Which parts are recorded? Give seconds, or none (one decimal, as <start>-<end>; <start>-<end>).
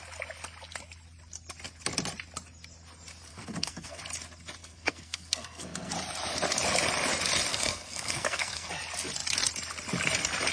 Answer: 0.0-3.3; 4.0-4.6; 5.9-7.5; 8.7-10.5